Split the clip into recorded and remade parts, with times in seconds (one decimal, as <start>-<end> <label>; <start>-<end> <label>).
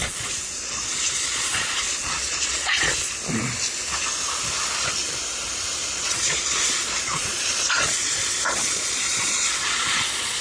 0.0-2.9 remade; 2.9-5.8 recorded; 5.8-10.4 remade